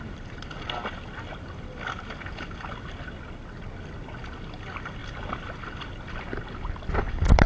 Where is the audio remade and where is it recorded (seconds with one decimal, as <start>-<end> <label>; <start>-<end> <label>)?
0.0-7.5 recorded